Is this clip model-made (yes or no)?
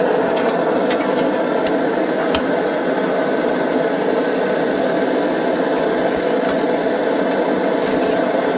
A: no